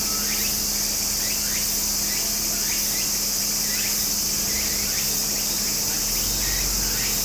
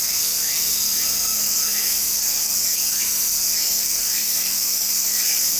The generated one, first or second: second